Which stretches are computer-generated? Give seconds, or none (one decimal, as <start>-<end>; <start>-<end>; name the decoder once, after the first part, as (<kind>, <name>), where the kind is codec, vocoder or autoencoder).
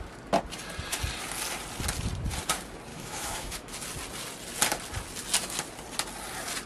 2.9-3.7 (autoencoder, DAC-VAE)